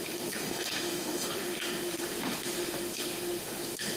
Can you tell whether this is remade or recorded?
remade